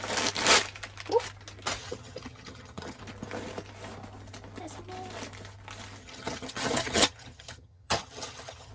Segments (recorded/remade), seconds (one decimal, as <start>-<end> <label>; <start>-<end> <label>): 0.0-1.8 recorded; 1.8-3.0 remade; 3.0-6.0 recorded; 6.0-8.7 remade

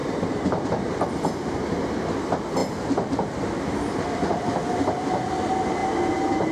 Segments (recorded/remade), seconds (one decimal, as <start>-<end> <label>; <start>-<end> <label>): 0.0-0.6 remade; 0.6-5.8 recorded; 5.8-6.5 remade

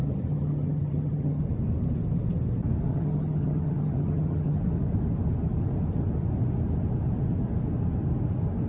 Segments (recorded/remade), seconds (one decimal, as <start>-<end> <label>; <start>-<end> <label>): 0.0-1.4 remade; 1.4-2.9 recorded; 2.9-4.6 remade; 4.6-8.7 recorded

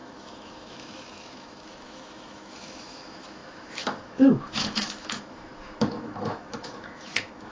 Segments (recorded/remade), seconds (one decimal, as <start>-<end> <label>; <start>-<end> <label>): 0.0-7.5 remade